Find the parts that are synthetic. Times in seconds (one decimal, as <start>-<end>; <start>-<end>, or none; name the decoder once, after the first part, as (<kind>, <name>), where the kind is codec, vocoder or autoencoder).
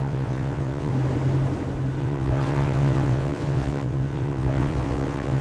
0.0-0.9 (vocoder, WaveNeXt); 2.0-5.4